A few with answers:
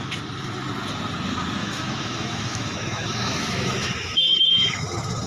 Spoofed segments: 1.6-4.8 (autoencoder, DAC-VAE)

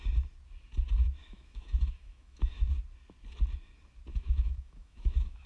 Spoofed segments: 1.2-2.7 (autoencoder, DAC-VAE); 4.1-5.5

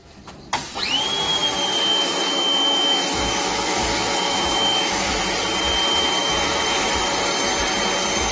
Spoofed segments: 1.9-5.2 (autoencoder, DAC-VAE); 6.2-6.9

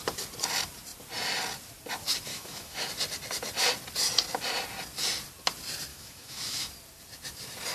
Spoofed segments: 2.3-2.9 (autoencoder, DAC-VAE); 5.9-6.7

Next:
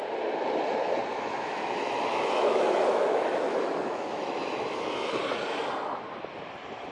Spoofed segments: 1.1-5.2 (autoencoder, DAC-VAE)

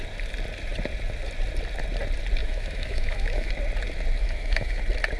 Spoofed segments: 2.4-3.5 (autoencoder, DAC-VAE); 4.2-4.8

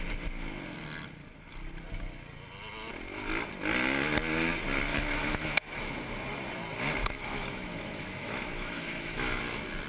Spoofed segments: 4.9-5.9 (autoencoder, DAC-VAE); 7.0-9.4

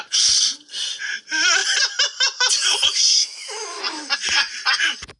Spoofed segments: 3.2-3.8 (autoencoder, DAC-VAE)